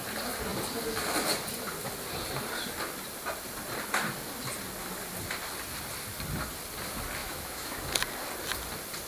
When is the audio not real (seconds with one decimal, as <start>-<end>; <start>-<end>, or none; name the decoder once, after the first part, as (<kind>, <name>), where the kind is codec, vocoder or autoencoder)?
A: 7.2-7.8 (autoencoder, DAC-VAE)